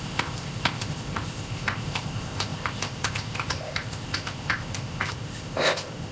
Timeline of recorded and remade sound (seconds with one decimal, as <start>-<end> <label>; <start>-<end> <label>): 0.0-6.1 remade